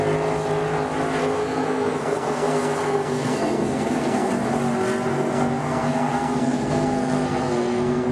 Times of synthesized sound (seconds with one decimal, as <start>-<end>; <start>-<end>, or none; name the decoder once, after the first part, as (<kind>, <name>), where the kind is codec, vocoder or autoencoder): 1.2-4.3 (codec, SNAC); 5.1-8.1